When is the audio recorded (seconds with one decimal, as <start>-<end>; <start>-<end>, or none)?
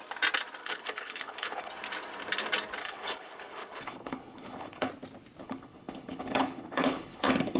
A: 0.0-0.6; 1.7-2.8; 4.9-5.4